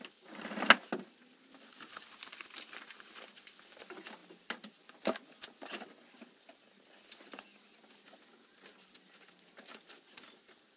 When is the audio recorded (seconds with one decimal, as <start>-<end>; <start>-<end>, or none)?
0.0-10.8